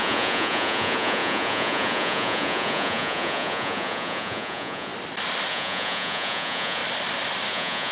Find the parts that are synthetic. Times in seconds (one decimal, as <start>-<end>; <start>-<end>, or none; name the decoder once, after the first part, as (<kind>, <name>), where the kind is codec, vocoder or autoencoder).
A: 0.0-4.9 (vocoder, Vocos); 5.5-6.8; 7.5-7.9